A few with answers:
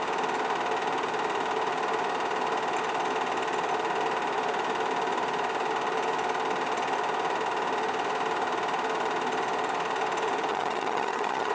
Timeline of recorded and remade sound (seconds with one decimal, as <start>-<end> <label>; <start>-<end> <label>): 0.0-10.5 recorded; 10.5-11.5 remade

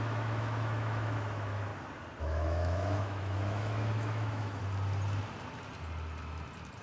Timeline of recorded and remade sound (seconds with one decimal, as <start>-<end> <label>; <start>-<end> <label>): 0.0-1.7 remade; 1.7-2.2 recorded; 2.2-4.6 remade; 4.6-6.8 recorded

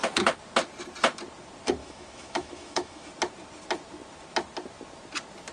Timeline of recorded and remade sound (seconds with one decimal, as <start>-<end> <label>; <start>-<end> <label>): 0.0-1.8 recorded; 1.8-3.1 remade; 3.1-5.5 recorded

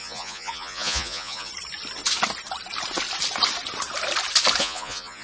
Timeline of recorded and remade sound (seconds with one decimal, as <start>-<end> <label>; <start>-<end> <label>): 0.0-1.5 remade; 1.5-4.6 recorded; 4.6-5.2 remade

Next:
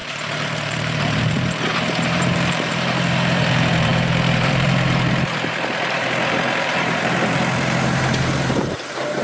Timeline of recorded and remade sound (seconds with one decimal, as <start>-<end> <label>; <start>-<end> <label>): 0.0-9.2 remade

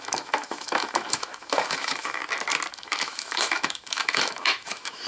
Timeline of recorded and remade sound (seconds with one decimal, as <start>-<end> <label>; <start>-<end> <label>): 0.0-2.2 remade; 2.2-2.7 recorded; 2.7-5.1 remade

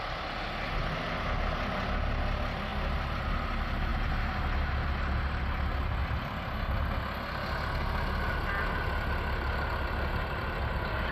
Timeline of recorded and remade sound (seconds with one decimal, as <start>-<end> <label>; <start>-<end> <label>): 0.0-11.1 recorded